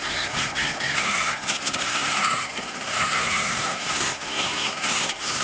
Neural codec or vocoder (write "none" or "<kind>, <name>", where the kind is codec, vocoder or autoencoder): codec, SNAC